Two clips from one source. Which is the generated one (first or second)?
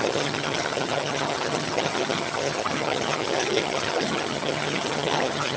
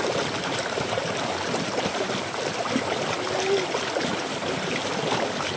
first